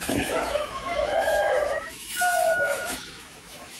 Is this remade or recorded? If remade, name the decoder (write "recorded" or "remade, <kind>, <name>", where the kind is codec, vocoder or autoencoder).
remade, autoencoder, DAC-VAE